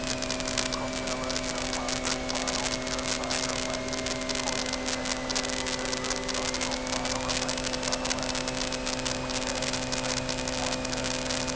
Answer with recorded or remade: recorded